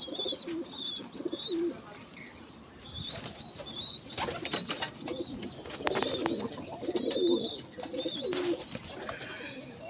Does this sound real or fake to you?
real